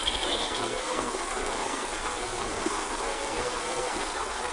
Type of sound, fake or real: fake